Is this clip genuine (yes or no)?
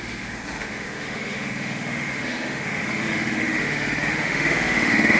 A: no